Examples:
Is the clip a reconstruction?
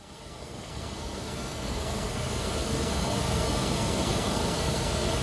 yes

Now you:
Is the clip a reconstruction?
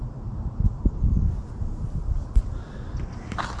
no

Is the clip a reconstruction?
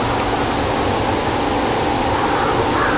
no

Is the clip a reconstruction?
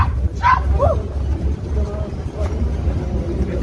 no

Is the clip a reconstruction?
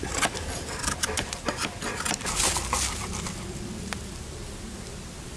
no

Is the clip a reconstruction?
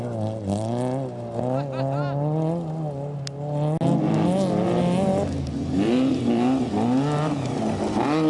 no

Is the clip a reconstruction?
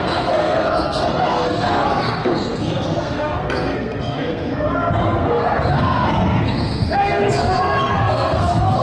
yes